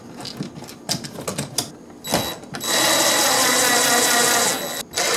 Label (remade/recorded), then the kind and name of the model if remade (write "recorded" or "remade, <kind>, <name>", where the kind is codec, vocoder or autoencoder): recorded